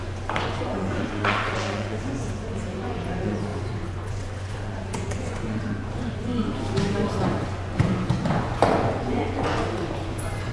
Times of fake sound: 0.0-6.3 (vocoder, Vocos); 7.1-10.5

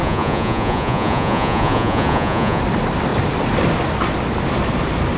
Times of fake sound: 0.0-2.6 (vocoder, Vocos)

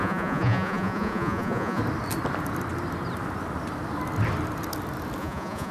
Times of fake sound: 0.0-1.8 (vocoder, Vocos); 5.2-5.7

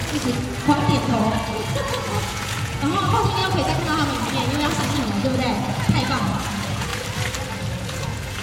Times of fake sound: 1.8-3.4 (vocoder, Vocos); 4.8-6.9; 7.8-8.4

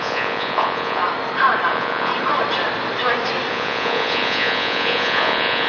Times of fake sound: 0.0-1.0 (vocoder, Vocos); 1.7-2.1; 3.5-5.7

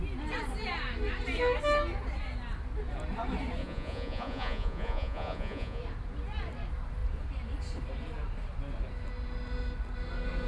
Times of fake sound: 3.6-5.8 (vocoder, Vocos)

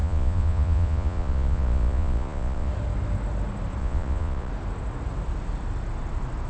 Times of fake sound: 0.0-2.7 (vocoder, Vocos); 3.8-4.5

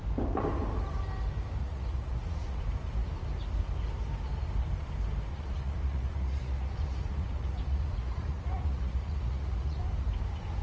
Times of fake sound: 1.6-2.6 (vocoder, Vocos); 5.3-9.8